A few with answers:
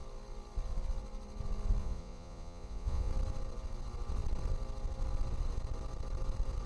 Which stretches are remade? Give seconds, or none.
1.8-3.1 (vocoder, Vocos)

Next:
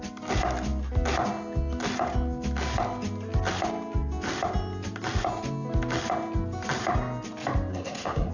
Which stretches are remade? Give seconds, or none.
7.7-8.3 (codec, SNAC)

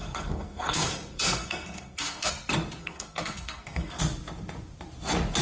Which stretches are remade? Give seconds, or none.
0.0-2.3 (codec, SNAC); 2.8-4.0

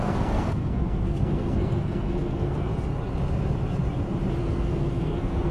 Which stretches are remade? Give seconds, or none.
0.0-2.7 (codec, SNAC); 4.4-5.5

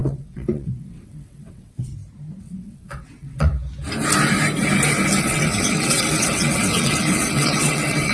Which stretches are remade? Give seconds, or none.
0.0-1.9 (vocoder, WaveNeXt); 2.4-3.5; 5.2-8.1